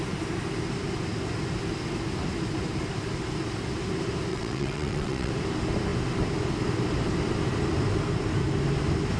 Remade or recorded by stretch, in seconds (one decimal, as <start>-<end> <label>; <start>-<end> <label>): 0.0-4.3 recorded; 4.3-5.3 remade; 5.3-9.2 recorded